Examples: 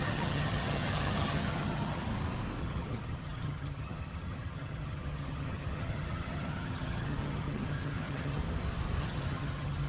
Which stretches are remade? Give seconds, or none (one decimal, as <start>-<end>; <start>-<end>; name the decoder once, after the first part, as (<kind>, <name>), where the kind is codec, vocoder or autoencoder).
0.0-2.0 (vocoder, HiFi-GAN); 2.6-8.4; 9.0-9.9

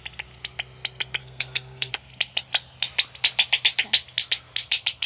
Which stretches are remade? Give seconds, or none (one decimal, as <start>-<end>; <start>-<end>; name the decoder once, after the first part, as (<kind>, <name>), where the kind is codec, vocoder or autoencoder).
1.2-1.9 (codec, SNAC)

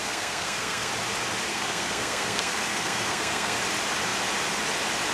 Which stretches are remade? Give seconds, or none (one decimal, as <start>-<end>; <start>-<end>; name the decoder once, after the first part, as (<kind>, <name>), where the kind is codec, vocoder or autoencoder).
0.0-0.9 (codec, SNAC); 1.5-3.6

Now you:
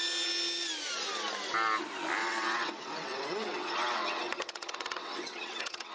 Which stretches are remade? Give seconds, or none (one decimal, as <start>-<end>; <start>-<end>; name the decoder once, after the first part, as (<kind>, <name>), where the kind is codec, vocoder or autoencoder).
2.2-5.9 (vocoder, WaveNeXt)

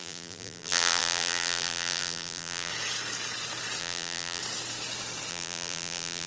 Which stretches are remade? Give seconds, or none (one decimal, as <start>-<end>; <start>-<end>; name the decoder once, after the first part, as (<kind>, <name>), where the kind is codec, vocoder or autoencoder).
0.0-2.7 (vocoder, BigVGAN v2); 3.8-4.4; 5.3-6.3

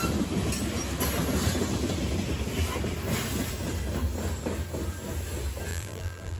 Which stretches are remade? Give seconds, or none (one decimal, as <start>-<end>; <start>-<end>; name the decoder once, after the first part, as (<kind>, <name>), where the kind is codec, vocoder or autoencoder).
5.7-6.4 (vocoder, BigVGAN v2)